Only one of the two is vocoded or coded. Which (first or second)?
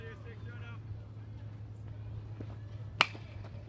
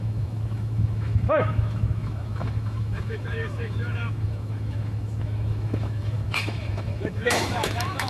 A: second